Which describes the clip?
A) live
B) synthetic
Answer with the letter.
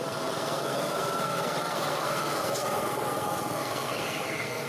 B